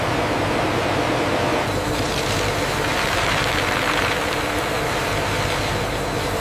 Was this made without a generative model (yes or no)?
yes